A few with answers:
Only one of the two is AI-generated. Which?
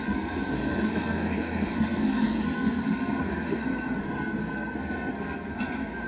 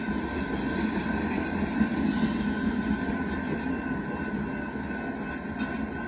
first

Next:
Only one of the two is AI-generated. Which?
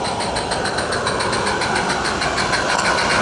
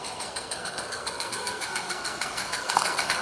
second